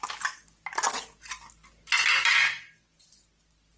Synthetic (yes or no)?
no